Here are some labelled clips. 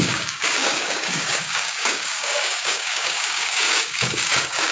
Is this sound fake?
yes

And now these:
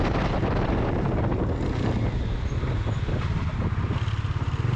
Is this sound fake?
no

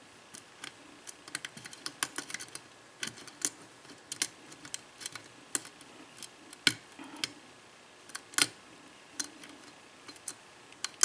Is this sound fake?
no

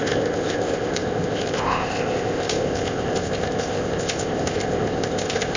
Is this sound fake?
yes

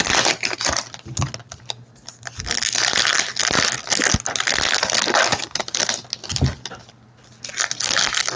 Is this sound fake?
no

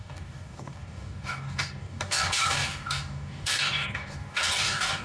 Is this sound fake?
yes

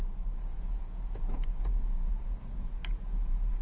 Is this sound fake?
yes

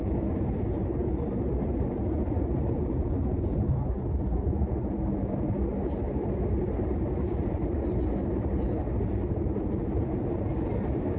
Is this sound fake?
no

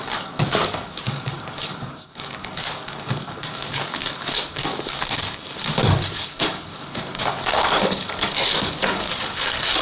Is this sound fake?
yes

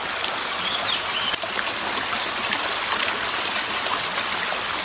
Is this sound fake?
no